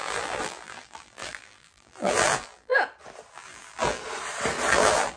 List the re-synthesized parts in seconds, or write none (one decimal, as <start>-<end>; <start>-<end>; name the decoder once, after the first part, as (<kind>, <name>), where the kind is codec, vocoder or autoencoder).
0.0-2.7 (vocoder, BigVGAN v2); 3.3-4.0; 4.7-5.2